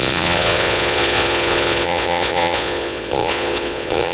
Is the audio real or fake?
fake